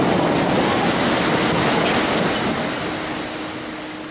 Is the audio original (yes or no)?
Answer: yes